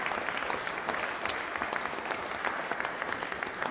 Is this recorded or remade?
recorded